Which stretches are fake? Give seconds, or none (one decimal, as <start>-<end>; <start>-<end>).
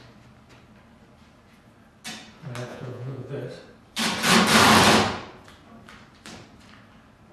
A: 2.7-3.3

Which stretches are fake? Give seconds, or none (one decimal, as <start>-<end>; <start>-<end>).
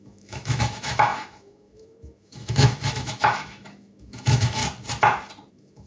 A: 0.0-4.6; 5.5-5.9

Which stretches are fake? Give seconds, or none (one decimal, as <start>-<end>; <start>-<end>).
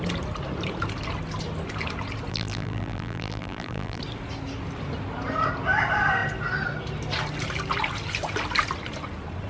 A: 2.3-4.0